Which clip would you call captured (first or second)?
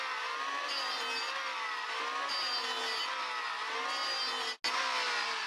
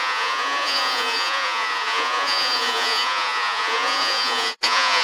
first